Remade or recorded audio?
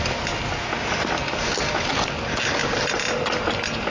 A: recorded